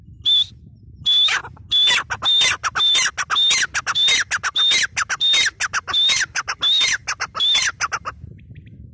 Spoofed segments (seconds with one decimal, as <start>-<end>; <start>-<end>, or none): none